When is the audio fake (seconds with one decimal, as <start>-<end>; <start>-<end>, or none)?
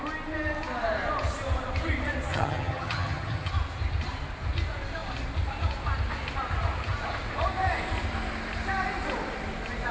2.3-3.5